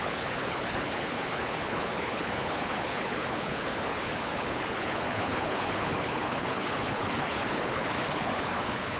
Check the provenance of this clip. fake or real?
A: fake